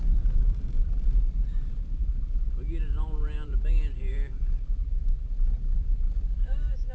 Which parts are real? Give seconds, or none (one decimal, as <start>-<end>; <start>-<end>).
none